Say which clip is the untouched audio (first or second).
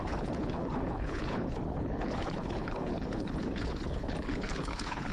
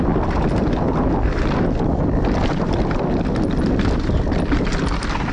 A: second